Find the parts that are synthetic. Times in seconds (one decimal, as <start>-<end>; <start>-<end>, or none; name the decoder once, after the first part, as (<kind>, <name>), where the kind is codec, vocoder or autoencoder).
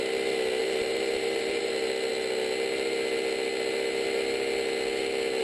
0.6-1.7 (vocoder, BigVGAN v2)